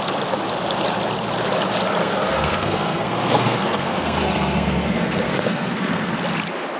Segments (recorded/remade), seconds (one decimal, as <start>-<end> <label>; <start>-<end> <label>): 0.0-2.0 recorded; 2.0-6.1 remade; 6.1-6.8 recorded